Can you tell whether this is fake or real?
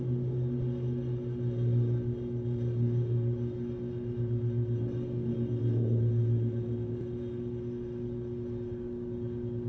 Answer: real